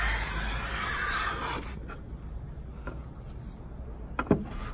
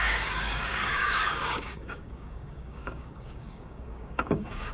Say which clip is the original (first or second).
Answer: first